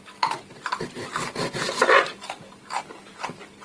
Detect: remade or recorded recorded